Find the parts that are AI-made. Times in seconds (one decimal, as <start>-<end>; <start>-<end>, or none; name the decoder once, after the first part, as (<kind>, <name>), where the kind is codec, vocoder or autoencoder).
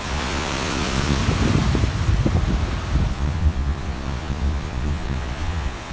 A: 0.0-1.2 (vocoder, Vocos); 3.1-5.9